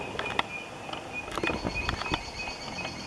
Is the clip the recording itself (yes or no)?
yes